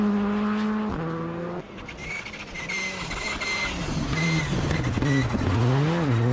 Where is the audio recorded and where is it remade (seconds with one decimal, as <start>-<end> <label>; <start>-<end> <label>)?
0.0-6.3 recorded